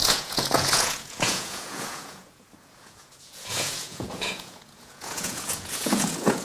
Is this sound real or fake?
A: fake